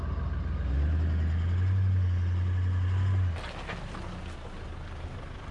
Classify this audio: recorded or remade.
recorded